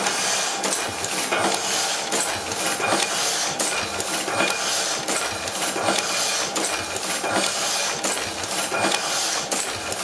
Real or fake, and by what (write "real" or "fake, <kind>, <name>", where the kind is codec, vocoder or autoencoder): real